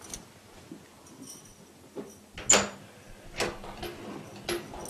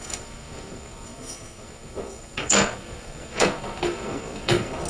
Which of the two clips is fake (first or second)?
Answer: second